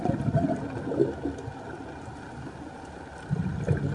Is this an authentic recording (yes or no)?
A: yes